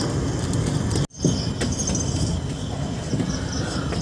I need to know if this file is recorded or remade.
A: recorded